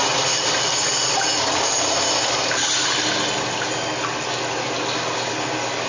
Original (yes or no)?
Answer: yes